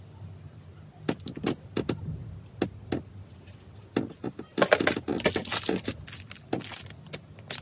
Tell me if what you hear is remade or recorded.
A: recorded